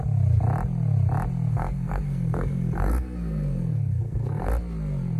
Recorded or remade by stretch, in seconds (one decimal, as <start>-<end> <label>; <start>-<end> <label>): 0.0-1.5 recorded; 1.5-4.5 remade; 4.5-5.2 recorded